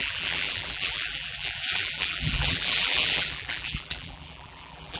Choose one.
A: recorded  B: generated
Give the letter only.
B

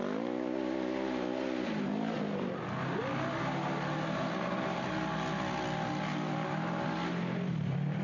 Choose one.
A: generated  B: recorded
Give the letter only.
B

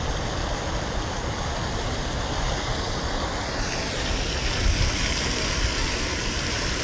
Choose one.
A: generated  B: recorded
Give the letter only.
B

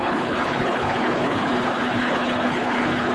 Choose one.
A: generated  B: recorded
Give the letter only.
A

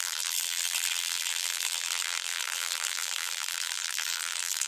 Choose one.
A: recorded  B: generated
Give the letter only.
B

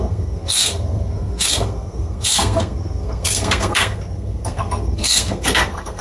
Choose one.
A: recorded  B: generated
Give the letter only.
B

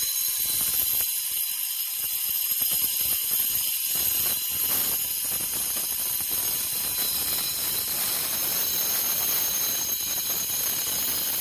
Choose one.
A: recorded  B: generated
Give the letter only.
A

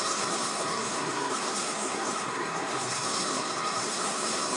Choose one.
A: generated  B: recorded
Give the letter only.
A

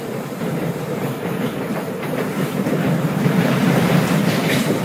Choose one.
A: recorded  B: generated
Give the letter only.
B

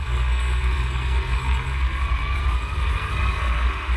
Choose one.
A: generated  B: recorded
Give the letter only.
A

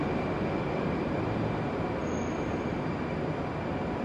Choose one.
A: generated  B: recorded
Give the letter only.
B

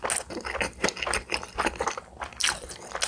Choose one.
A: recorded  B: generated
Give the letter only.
A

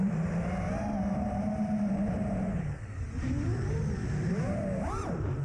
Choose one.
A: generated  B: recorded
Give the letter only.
A